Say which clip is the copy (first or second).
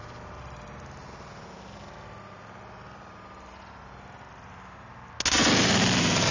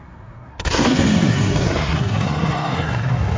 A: second